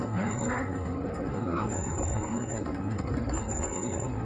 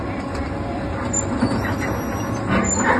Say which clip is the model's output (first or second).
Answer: first